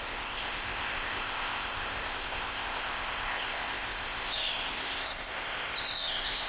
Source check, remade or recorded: remade